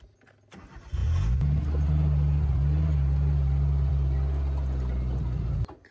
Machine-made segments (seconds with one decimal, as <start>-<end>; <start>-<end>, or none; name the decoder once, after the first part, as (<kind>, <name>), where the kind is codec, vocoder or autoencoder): none